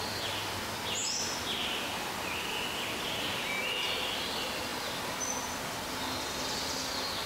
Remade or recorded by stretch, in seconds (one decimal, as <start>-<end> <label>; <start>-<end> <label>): 0.0-7.3 recorded